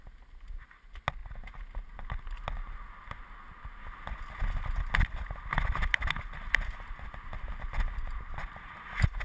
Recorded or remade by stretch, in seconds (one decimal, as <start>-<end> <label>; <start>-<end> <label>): 0.0-9.2 recorded